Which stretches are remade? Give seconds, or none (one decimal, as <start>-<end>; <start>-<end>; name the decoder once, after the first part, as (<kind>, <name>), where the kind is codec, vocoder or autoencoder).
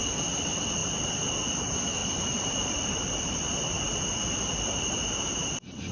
2.0-3.8 (vocoder, BigVGAN v2)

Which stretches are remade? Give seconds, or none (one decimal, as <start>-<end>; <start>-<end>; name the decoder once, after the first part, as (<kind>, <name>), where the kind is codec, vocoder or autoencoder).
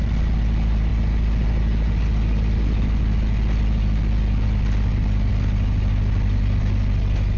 none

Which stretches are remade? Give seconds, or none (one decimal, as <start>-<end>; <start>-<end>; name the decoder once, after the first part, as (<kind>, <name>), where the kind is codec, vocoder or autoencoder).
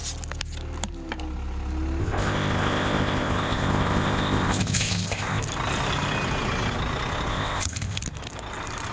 2.0-5.4 (codec, ZipCodec); 7.3-8.0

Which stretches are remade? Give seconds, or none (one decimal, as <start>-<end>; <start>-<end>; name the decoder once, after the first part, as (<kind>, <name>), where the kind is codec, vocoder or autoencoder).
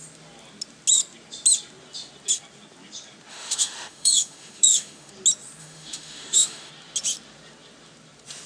3.3-5.1 (autoencoder, DAC-VAE); 5.6-6.7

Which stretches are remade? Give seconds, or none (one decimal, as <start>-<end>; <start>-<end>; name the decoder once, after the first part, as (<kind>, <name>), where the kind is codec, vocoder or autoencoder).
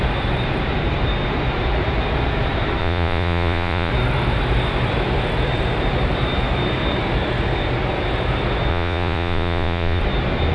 2.8-3.9 (vocoder, Vocos); 8.7-10.0